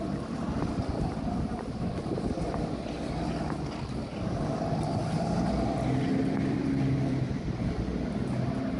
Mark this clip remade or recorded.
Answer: recorded